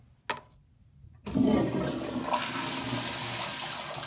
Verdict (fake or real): real